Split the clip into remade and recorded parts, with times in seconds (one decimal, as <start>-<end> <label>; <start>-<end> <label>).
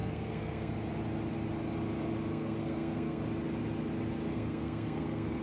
0.0-0.7 remade; 0.7-2.3 recorded; 2.3-3.2 remade; 3.2-4.3 recorded; 4.3-5.4 remade